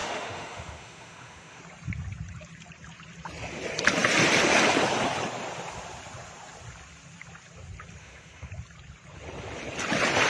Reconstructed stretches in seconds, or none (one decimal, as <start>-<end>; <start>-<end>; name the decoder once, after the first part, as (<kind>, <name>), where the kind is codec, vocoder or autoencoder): 0.0-1.6 (autoencoder, DAC-VAE); 8.0-8.5